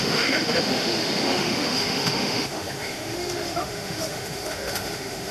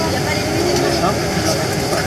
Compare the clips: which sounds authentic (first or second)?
second